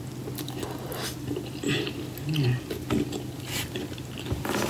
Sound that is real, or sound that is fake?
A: real